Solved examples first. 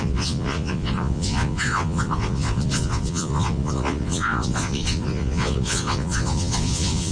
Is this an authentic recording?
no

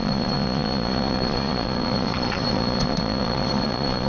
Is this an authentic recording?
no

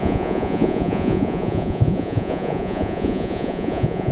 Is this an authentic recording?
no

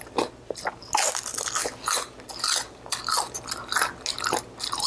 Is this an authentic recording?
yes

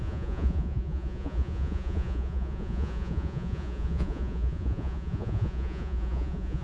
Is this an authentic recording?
no